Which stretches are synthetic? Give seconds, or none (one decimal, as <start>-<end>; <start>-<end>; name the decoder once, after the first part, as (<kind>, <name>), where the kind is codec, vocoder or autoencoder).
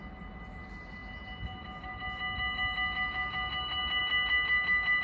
none